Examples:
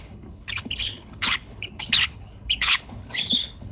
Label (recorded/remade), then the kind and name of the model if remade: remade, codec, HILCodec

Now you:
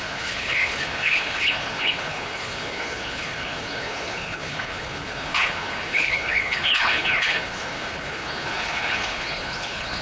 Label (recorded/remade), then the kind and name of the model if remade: remade, codec, HILCodec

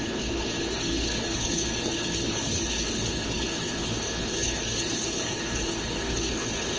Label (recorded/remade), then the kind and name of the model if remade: remade, codec, HILCodec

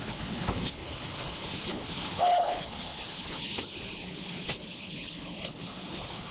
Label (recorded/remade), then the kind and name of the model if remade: remade, codec, HILCodec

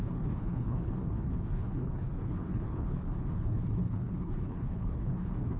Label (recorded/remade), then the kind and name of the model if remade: remade, codec, HILCodec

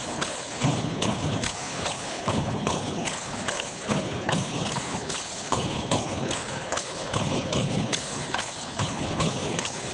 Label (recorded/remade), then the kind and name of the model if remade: remade, codec, HILCodec